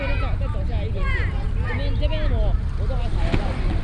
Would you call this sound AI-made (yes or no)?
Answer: no